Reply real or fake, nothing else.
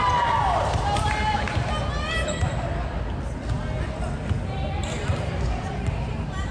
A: real